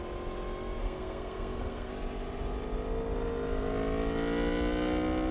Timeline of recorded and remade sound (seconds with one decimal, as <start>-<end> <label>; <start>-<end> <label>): 0.0-0.8 recorded; 0.8-1.9 remade; 1.9-5.3 recorded